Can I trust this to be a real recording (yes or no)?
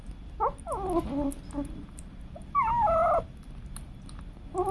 yes